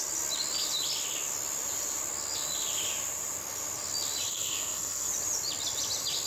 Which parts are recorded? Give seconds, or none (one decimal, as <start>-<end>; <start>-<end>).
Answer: 0.0-4.3; 5.1-6.3